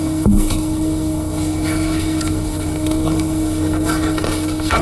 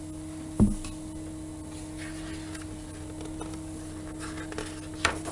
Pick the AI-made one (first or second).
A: first